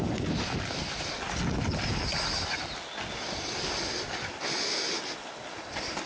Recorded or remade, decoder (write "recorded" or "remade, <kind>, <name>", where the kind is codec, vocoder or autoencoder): recorded